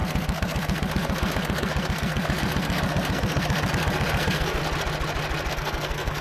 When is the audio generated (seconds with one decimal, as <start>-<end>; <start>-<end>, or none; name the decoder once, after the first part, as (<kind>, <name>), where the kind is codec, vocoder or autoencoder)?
0.0-4.6 (codec, SNAC); 5.5-6.2